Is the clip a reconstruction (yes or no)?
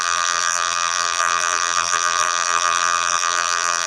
yes